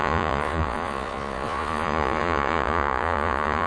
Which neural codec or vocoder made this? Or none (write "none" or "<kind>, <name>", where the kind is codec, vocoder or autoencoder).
vocoder, Vocos